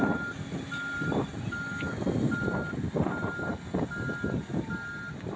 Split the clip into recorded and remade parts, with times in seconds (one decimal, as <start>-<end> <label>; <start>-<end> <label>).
0.0-5.4 recorded